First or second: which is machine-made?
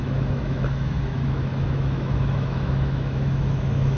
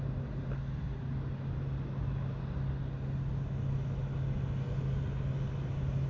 first